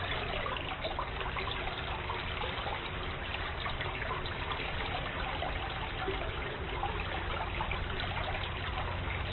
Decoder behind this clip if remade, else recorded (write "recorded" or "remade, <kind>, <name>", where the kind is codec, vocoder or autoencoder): recorded